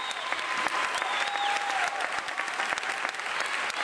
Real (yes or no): yes